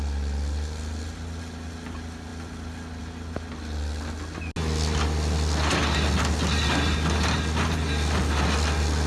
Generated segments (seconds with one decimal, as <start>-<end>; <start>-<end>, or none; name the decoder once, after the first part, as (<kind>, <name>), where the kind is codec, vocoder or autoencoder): none